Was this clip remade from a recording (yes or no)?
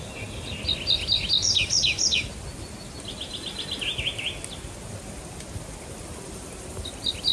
no